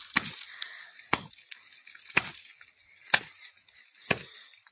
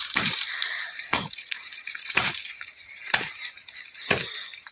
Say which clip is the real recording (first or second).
first